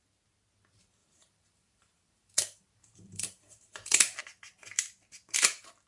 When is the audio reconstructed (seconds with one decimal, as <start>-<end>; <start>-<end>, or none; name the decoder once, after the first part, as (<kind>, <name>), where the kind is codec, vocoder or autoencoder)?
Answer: 1.0-4.2 (vocoder, BigVGAN v2)